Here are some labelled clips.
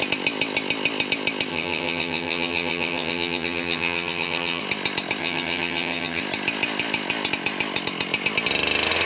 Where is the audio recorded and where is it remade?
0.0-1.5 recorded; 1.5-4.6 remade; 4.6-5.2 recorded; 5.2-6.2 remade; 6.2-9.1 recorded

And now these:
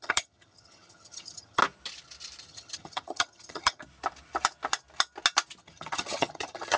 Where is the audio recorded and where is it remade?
0.0-1.6 remade; 1.6-2.4 recorded; 2.4-3.8 remade; 3.8-5.6 recorded; 5.6-6.8 remade

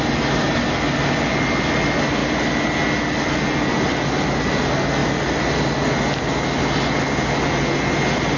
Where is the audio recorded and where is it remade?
0.0-8.4 recorded

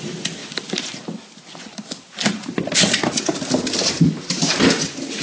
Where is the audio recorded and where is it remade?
0.0-5.2 recorded